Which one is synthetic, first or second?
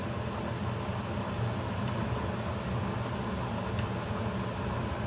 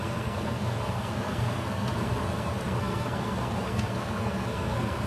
second